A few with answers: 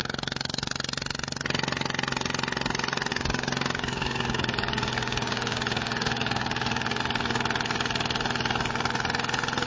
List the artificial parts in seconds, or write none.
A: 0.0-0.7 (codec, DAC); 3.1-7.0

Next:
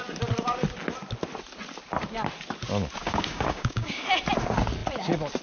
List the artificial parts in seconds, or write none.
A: 3.0-4.0 (codec, DAC)

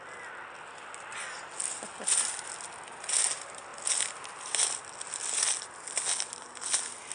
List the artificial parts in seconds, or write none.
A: none

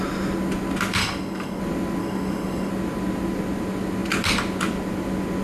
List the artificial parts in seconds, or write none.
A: 1.0-1.6 (codec, DAC); 2.0-2.7

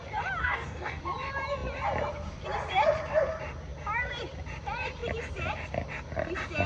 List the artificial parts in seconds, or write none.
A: 0.4-1.0 (codec, DAC)

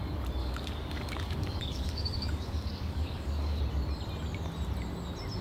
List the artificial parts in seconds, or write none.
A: 0.4-3.6 (codec, DAC)

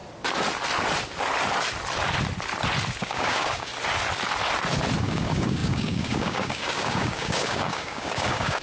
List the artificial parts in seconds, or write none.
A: 3.0-3.7 (codec, DAC); 5.0-8.6

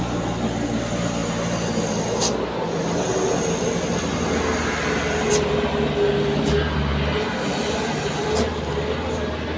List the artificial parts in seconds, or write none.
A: none